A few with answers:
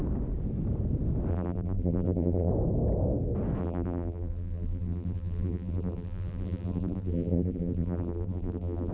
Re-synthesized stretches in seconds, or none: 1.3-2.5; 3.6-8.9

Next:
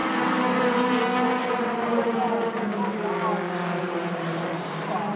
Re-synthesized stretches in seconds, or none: 1.4-3.3; 3.8-5.2

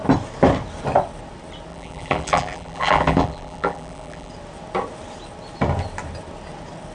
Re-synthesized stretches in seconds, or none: 1.7-4.3

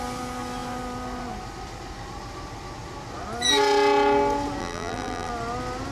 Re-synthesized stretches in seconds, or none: 4.6-5.3

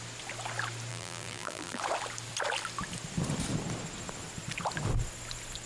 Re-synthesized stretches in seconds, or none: 0.9-1.8

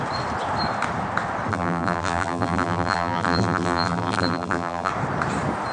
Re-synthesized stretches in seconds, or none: 1.5-4.9